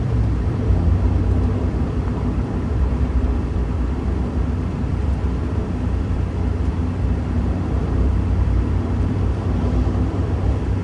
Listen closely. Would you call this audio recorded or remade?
remade